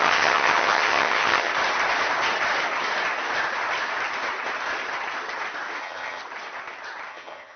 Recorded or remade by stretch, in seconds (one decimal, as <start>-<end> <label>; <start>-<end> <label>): 0.0-1.5 remade; 1.5-5.8 recorded; 5.8-6.2 remade; 6.2-7.1 recorded; 7.1-7.6 remade